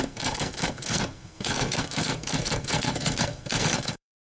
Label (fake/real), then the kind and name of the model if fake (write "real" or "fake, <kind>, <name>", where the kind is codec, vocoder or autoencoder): fake, codec, SNAC